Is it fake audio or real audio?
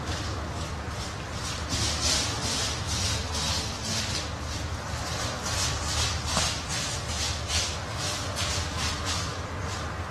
real